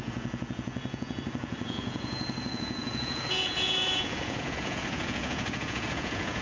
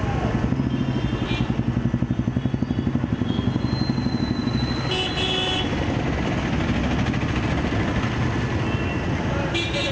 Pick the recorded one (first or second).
second